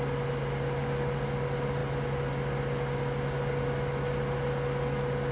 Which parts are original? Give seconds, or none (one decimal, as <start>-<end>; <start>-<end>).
0.0-5.3